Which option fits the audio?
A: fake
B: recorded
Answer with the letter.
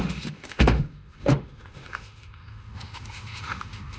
A